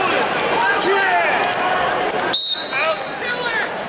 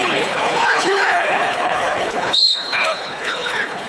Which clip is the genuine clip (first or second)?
first